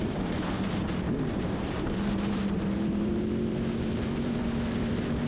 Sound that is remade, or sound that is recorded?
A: remade